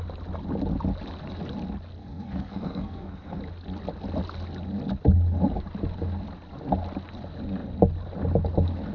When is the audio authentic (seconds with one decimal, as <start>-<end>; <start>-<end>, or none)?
0.0-2.0; 3.4-8.9

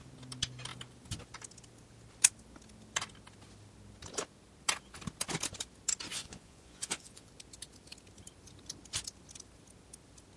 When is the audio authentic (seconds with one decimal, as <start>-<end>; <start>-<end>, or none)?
0.0-6.1; 7.3-10.4